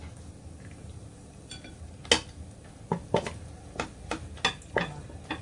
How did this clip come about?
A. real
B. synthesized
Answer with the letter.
A